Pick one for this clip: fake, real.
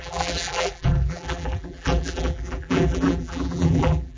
fake